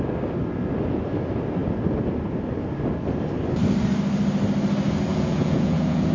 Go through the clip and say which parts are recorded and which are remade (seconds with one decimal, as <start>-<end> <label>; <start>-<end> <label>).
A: 0.0-5.1 recorded; 5.1-6.1 remade